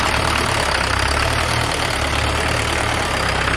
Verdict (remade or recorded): remade